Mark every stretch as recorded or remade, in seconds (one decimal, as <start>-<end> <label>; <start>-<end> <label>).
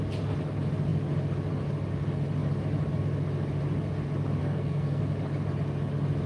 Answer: 0.0-4.4 recorded; 4.4-5.0 remade; 5.0-6.3 recorded